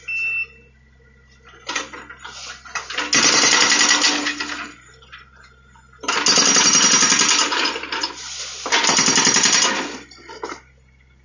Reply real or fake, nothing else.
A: real